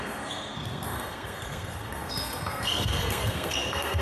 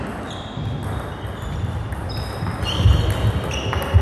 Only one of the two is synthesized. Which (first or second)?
first